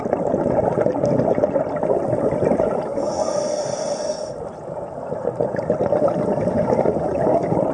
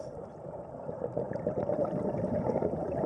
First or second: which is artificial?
second